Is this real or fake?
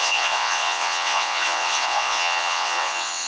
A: fake